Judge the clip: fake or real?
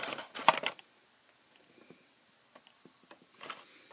real